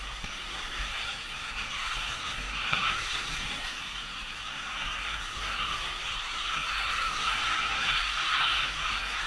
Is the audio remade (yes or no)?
yes